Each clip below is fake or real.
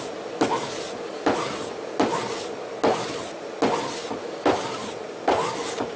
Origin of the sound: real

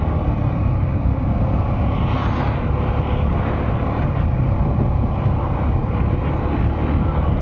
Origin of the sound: real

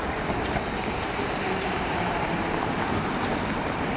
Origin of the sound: fake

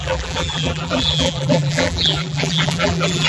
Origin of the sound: fake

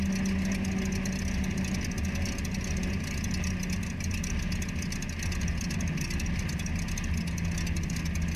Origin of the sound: real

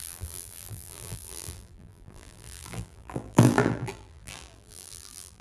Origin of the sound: fake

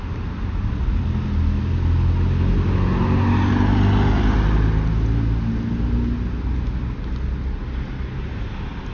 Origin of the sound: real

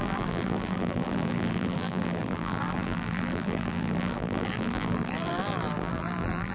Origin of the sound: fake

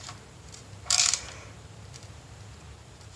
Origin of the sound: fake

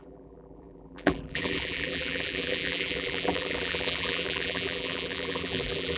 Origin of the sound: fake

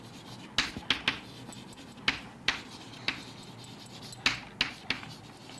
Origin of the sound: real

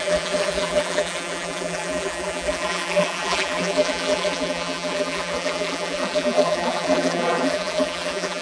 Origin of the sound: fake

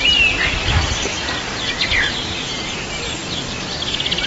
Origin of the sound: fake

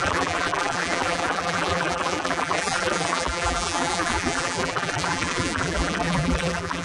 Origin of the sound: fake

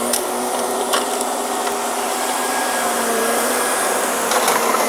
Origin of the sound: fake